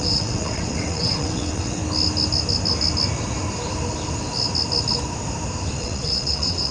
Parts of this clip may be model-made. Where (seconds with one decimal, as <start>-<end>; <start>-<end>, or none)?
0.0-1.8; 5.8-6.7